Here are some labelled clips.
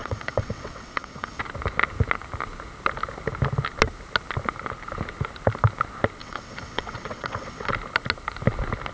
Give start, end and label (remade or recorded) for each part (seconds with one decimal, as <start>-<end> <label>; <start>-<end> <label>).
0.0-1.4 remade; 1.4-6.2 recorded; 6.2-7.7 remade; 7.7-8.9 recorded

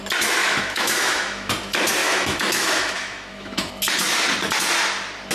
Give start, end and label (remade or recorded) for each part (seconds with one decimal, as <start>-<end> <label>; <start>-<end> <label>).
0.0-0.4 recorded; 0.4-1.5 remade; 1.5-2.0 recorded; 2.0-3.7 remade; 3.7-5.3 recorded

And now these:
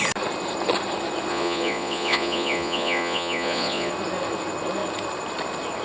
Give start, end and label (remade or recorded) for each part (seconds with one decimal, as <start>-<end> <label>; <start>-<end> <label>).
0.0-1.3 recorded; 1.3-3.9 remade; 3.9-5.8 recorded

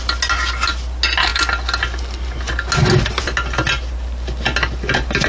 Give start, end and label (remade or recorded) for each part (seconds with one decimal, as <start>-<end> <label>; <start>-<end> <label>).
0.0-5.3 recorded